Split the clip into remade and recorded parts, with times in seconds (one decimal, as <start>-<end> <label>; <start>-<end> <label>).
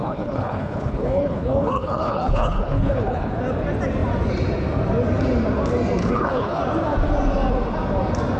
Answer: 0.0-3.3 remade; 3.3-6.0 recorded; 6.0-6.6 remade; 6.6-8.4 recorded